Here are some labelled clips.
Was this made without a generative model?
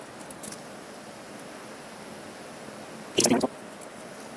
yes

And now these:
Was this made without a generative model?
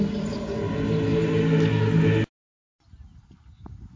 yes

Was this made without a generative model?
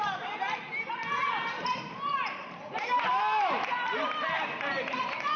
no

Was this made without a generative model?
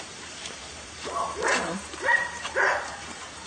no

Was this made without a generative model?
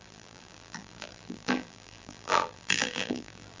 no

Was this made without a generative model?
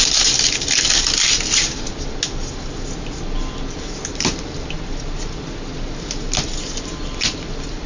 yes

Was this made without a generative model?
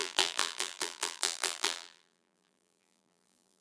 no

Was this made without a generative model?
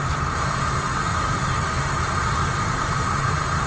no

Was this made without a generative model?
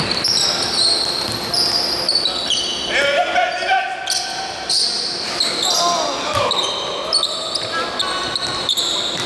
yes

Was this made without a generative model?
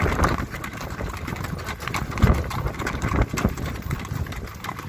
yes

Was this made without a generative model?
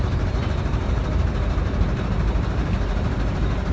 no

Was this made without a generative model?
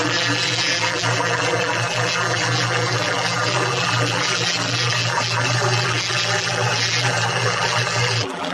no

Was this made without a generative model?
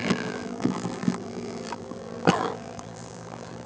no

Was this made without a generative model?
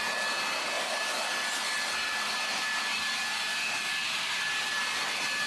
yes